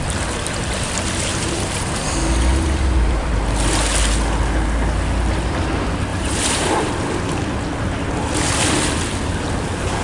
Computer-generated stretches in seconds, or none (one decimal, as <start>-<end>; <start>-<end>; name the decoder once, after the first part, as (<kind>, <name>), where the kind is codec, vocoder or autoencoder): 1.3-2.0 (vocoder, BigVGAN v2); 2.5-3.3; 6.1-6.9